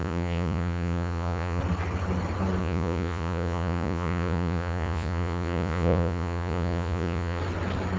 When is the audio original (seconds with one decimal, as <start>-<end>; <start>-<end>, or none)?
1.6-2.6; 7.4-8.0